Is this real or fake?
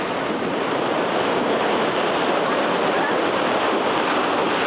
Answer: real